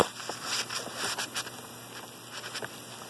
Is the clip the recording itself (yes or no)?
yes